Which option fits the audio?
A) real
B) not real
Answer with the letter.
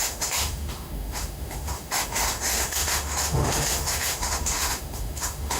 B